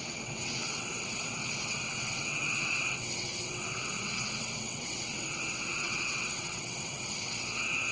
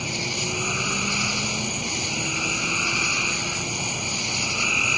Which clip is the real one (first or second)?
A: second